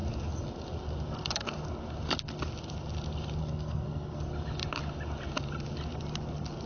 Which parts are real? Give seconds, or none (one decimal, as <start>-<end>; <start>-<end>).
0.0-3.4; 4.2-6.7